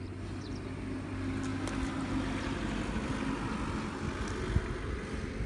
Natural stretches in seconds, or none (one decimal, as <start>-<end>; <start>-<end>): 0.0-5.5